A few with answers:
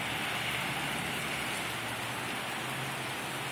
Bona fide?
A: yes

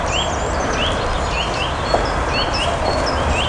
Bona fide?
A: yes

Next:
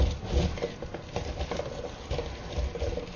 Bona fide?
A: yes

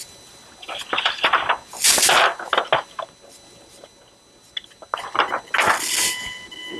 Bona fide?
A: yes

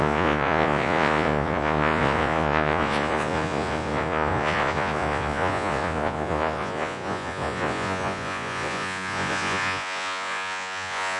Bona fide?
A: no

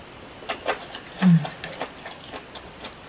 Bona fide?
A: yes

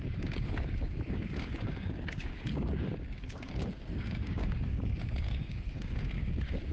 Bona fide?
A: no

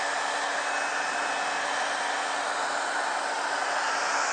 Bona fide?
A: yes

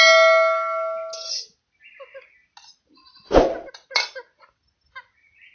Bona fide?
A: yes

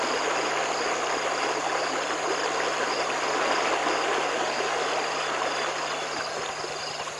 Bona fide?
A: yes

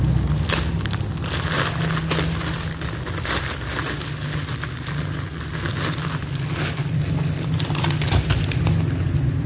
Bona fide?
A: yes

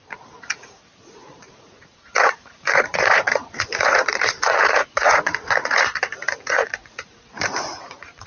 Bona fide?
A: no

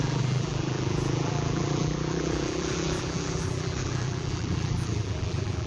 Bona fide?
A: no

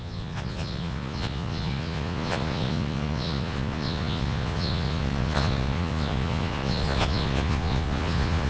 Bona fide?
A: no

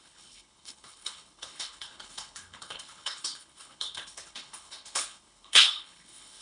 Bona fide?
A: no